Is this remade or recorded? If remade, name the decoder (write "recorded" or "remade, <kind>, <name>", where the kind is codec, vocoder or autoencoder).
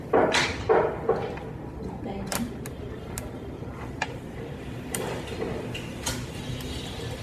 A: recorded